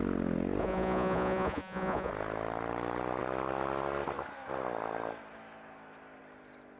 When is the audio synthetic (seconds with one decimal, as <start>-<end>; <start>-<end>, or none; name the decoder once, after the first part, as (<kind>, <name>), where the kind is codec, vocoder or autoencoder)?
0.6-2.1 (vocoder, Vocos)